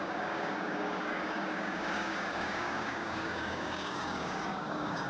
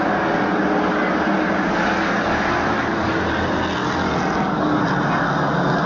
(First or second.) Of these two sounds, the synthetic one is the first